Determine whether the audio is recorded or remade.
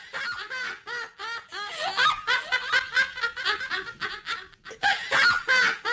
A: recorded